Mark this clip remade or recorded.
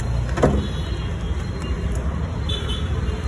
recorded